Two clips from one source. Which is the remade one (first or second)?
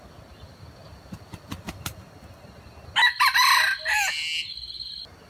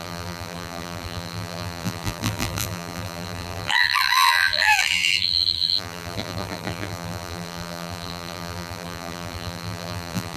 second